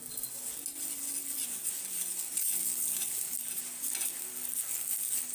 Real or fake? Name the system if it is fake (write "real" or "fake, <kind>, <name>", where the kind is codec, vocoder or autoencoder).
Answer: real